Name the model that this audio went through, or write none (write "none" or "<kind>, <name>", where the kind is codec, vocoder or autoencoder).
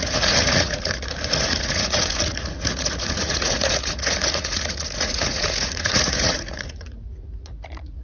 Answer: vocoder, Vocos